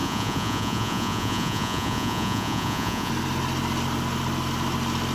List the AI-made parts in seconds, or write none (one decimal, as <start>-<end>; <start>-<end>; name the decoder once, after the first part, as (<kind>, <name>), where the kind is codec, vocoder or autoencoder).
0.0-3.1 (vocoder, Vocos)